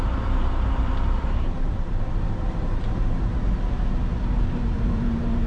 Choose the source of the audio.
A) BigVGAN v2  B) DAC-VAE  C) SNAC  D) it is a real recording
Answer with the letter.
A